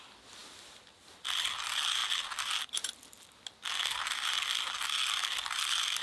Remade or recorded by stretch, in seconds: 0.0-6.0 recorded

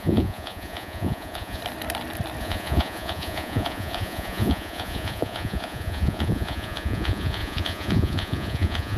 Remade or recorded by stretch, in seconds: 0.0-1.6 remade; 1.6-2.4 recorded; 2.4-9.0 remade